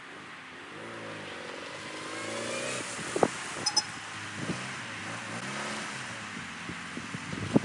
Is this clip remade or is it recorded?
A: recorded